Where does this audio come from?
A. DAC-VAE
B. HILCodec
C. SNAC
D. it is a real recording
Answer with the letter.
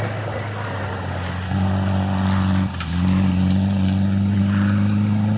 D